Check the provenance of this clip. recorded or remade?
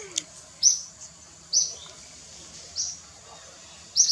recorded